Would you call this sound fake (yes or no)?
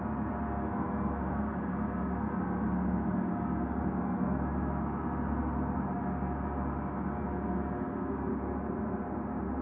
no